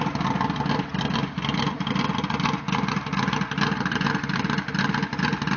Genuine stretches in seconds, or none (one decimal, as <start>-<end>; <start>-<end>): 0.0-5.6